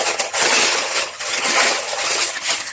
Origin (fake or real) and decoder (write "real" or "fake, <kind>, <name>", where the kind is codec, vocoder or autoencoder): fake, vocoder, HiFi-GAN